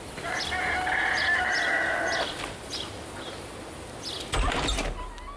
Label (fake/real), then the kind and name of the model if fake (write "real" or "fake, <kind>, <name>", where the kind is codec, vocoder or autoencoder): real